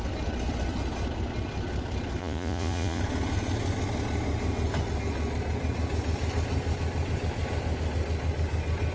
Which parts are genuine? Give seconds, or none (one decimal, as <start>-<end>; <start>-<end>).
0.0-2.2; 3.0-8.9